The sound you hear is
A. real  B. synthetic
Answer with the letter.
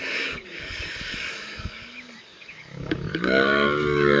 B